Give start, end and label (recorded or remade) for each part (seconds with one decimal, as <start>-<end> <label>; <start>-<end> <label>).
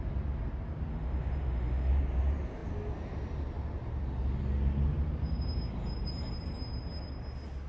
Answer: 0.0-0.9 recorded; 0.9-1.9 remade; 1.9-7.7 recorded